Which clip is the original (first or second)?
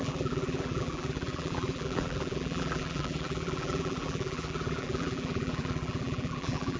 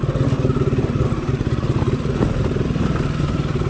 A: second